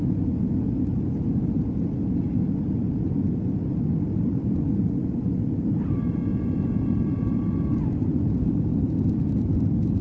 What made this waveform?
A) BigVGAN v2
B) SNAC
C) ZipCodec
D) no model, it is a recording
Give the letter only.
D